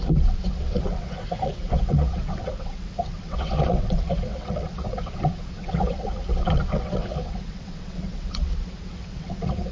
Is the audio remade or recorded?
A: remade